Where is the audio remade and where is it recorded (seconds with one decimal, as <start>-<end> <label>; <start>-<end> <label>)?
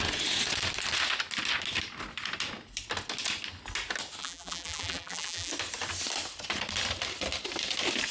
0.0-4.2 recorded; 4.2-5.5 remade; 5.5-8.1 recorded